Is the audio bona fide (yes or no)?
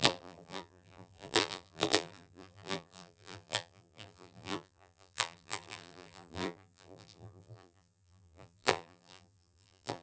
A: no